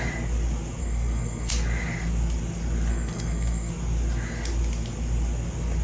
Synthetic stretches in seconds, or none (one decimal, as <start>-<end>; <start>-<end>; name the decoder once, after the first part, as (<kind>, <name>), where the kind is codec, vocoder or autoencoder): 0.8-1.5 (codec, SNAC); 2.9-3.7